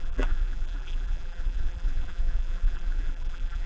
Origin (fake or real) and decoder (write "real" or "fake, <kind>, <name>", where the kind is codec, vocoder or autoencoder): fake, vocoder, BigVGAN v2